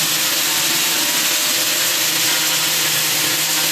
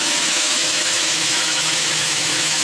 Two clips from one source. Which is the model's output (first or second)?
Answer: second